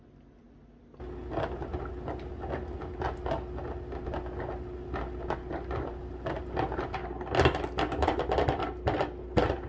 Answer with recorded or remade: recorded